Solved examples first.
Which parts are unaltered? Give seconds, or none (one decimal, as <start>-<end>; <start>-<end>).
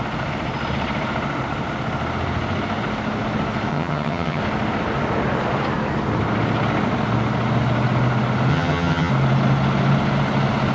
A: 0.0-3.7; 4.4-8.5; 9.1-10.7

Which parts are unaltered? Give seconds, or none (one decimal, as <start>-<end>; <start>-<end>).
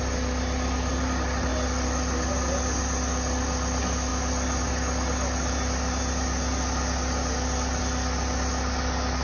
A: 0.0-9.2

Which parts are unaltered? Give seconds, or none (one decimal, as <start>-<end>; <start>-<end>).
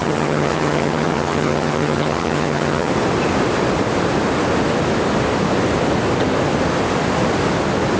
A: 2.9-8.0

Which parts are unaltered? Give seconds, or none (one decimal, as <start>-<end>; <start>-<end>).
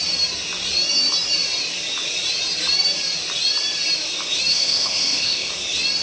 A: 0.0-4.5; 5.5-6.0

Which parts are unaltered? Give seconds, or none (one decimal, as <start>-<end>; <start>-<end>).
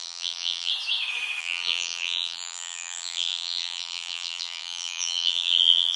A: 0.7-1.4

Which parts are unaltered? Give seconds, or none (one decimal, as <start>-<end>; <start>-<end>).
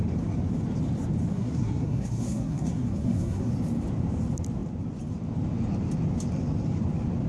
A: 0.0-1.3; 3.5-7.3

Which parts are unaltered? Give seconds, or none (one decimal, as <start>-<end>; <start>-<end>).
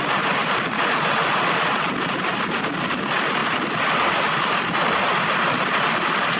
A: 0.0-6.4